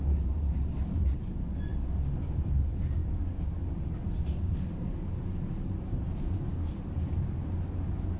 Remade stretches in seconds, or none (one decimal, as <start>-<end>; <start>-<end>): 0.0-1.7; 2.6-3.0; 4.4-8.2